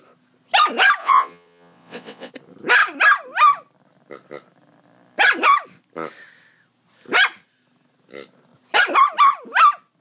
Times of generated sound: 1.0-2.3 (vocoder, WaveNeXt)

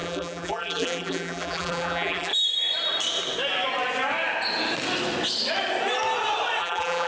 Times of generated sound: 0.0-2.3 (vocoder, BigVGAN v2); 6.6-7.1

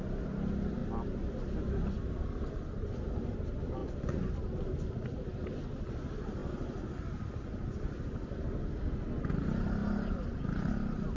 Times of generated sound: 3.8-4.3 (vocoder, Vocos)

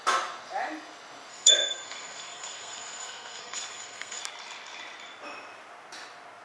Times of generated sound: 1.3-4.2 (codec, SNAC)

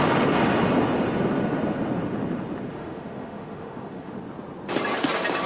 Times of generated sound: 2.7-4.2 (autoencoder, DAC-VAE)

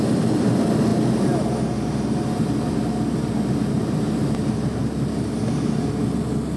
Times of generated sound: none